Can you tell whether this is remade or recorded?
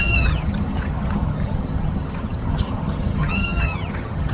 remade